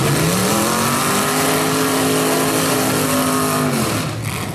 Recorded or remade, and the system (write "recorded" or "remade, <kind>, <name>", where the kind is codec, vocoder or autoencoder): recorded